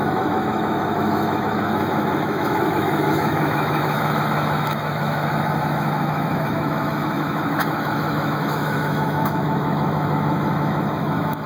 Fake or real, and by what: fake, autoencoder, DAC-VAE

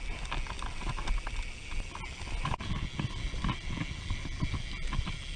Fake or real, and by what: real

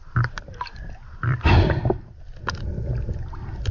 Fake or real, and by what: real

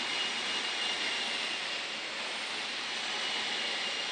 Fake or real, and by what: real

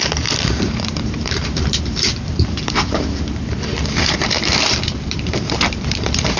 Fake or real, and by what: fake, vocoder, BigVGAN v2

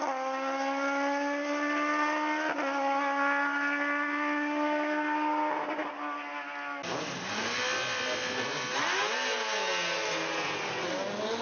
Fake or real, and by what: real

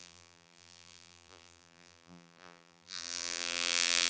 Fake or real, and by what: fake, vocoder, BigVGAN v2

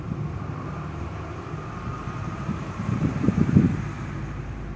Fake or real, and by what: fake, vocoder, BigVGAN v2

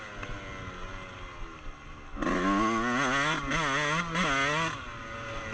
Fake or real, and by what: real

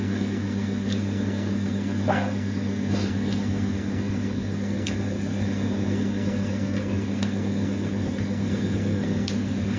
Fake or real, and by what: fake, codec, SNAC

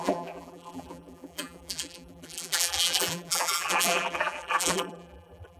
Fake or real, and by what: fake, vocoder, BigVGAN v2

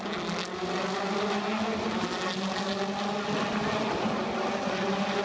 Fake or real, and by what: real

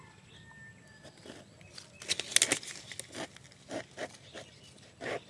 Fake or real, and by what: real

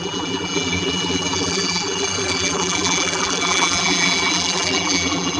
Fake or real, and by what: fake, vocoder, BigVGAN v2